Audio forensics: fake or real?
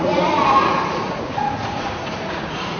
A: fake